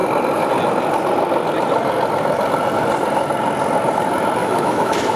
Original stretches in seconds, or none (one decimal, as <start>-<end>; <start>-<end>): 0.0-4.4